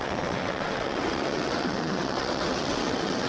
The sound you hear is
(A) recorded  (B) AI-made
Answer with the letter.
B